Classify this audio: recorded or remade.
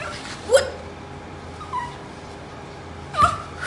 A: recorded